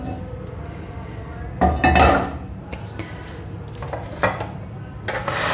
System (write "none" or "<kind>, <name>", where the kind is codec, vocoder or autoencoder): none